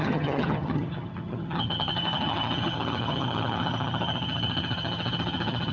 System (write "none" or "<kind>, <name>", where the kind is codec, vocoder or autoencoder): vocoder, HiFi-GAN